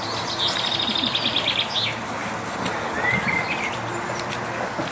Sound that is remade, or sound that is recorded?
recorded